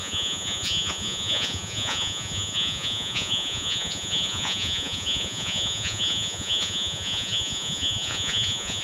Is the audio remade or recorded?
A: remade